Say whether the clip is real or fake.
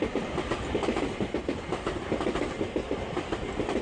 real